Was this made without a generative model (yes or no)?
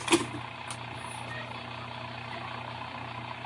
yes